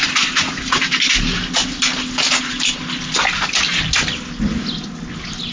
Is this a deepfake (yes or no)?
no